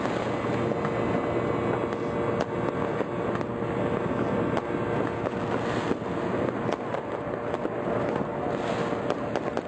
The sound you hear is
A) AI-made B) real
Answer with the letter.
B